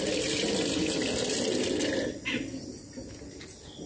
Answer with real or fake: real